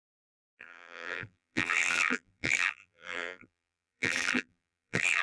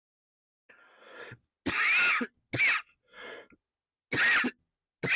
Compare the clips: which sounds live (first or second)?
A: second